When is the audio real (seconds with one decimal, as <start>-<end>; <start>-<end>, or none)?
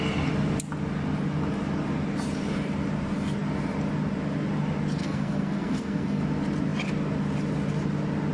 0.0-5.0; 6.2-8.3